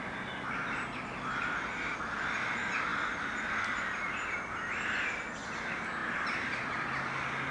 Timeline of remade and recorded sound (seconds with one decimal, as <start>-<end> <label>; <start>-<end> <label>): 0.0-7.5 recorded